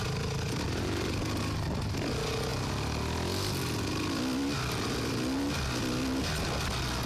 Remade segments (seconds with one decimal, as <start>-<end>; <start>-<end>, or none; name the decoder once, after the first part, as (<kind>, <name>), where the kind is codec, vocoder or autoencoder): none